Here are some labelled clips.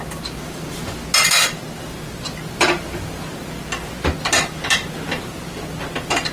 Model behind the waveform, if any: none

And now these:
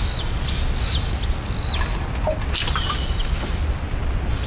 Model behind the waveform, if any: none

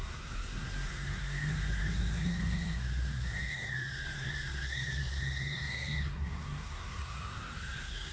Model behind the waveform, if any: codec, SNAC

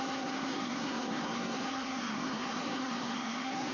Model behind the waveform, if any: codec, SNAC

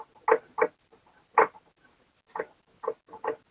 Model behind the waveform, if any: none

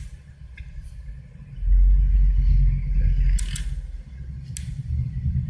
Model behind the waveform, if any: none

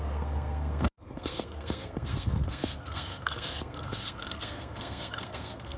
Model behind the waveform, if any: codec, SNAC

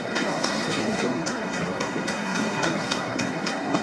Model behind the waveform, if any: codec, SNAC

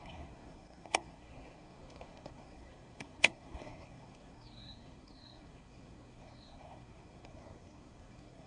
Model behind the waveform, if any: codec, SNAC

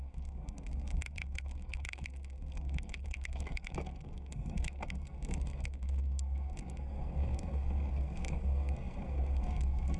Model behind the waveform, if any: codec, SNAC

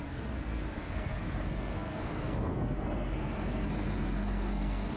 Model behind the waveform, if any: codec, SNAC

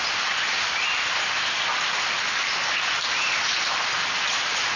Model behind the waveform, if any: none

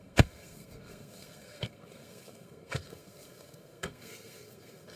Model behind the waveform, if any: codec, SNAC